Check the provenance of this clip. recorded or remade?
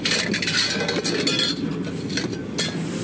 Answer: recorded